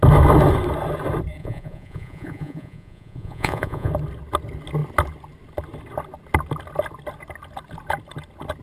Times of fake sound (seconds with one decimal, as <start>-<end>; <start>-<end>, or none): 1.4-3.9